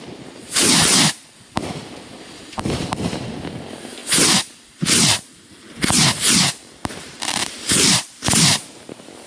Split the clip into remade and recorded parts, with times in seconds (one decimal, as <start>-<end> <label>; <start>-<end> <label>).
0.0-4.0 remade; 4.0-5.3 recorded; 5.3-9.3 remade